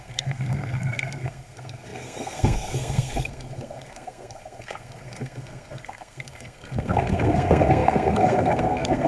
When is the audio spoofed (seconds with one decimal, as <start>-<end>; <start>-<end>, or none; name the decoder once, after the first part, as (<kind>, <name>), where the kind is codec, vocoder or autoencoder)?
0.0-9.1 (codec, SNAC)